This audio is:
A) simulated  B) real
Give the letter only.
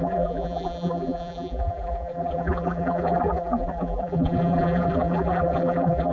A